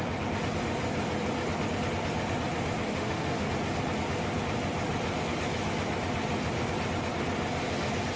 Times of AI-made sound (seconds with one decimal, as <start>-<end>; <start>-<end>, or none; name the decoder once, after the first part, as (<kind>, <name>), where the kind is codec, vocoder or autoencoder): 2.9-3.5 (autoencoder, DAC-VAE)